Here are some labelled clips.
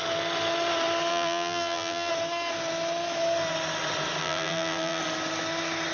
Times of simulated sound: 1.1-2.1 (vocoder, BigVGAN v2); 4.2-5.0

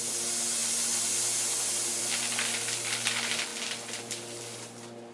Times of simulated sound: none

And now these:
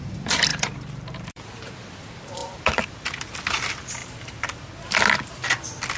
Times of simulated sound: 0.5-1.4 (vocoder, BigVGAN v2); 2.4-3.2; 4.0-4.7

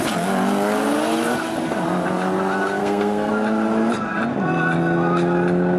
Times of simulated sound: 2.8-3.3 (codec, SNAC)

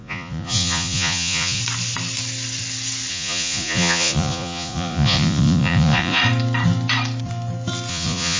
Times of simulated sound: 0.0-1.6 (vocoder, Vocos); 3.1-6.2; 7.9-8.4